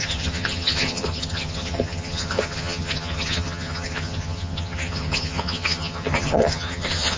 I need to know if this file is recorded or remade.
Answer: remade